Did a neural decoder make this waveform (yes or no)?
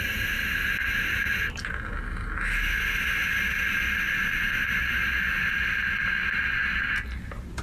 no